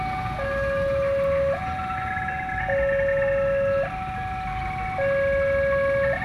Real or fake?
real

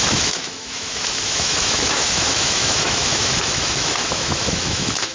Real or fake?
fake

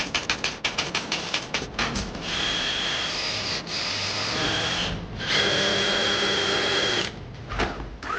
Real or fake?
real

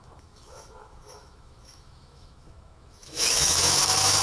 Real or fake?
fake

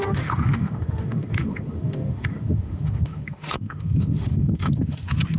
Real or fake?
fake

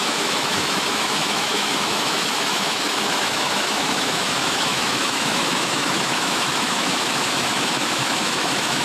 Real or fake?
fake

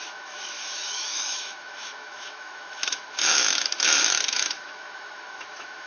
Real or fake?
fake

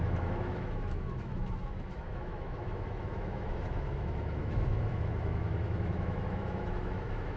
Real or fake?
fake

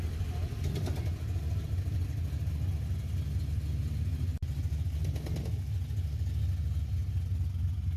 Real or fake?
real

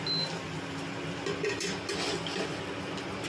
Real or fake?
real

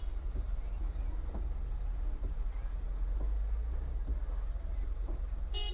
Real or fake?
real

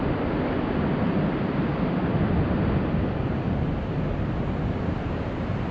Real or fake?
real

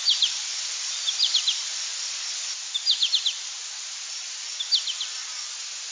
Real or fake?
real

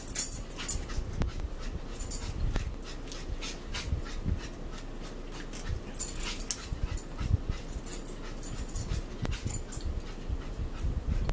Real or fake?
real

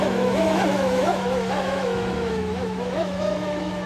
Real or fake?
fake